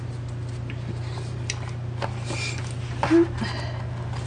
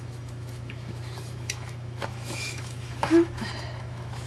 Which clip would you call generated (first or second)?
second